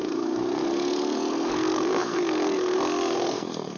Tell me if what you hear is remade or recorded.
remade